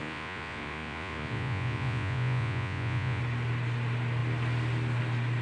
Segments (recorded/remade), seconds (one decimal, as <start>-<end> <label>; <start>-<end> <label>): 0.0-3.2 remade; 3.2-5.4 recorded